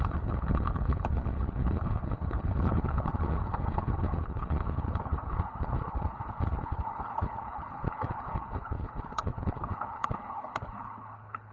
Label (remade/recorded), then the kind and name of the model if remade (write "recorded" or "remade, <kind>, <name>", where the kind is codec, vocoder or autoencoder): remade, codec, HILCodec